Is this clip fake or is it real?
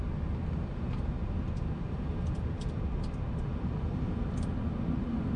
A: real